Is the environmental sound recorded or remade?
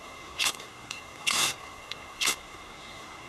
remade